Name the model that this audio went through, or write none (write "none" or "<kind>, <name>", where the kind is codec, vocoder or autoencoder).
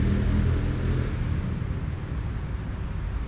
none